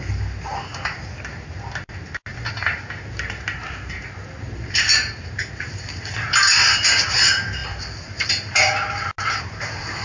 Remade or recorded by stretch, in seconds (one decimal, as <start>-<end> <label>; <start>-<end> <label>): 0.0-10.0 recorded